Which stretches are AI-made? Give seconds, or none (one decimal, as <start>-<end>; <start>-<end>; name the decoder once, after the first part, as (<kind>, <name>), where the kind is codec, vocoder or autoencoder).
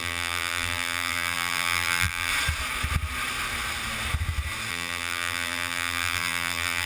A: 0.0-2.3 (vocoder, BigVGAN v2); 4.7-6.9